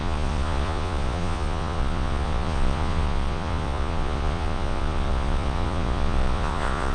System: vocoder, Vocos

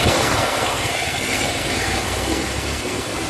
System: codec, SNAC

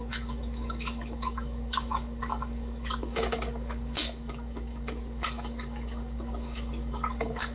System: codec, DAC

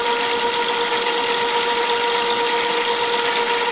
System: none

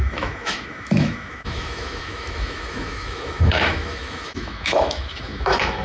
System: autoencoder, DAC-VAE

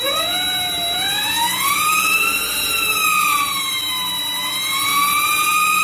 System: none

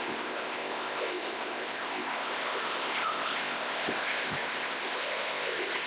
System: codec, ZipCodec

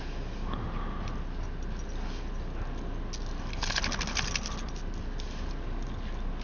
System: none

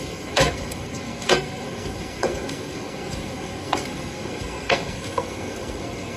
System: codec, SNAC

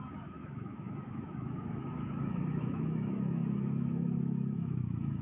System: autoencoder, DAC-VAE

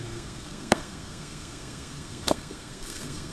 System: codec, SNAC